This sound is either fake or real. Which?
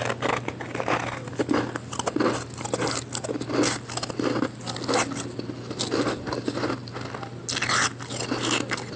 real